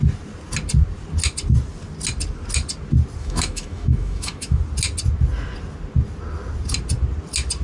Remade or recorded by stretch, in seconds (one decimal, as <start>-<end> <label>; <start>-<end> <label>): 0.0-3.2 recorded; 3.2-4.6 remade; 4.6-7.6 recorded